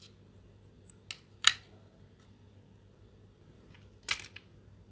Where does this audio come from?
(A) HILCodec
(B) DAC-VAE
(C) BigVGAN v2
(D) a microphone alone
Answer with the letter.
D